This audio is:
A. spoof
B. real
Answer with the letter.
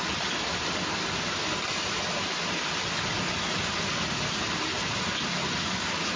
B